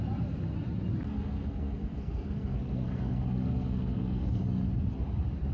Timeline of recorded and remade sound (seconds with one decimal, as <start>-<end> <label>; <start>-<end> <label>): 0.0-1.1 recorded; 1.1-4.4 remade; 4.4-5.5 recorded